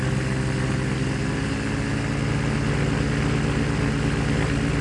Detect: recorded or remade recorded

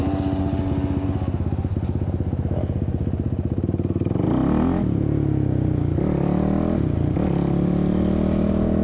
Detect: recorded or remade recorded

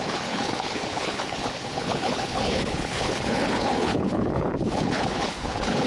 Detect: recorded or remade remade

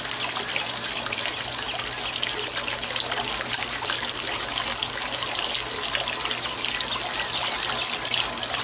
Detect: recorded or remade recorded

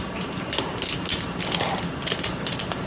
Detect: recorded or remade recorded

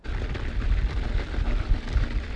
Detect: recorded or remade recorded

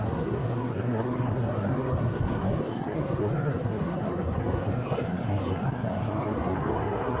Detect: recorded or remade remade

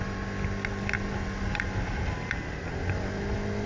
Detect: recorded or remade recorded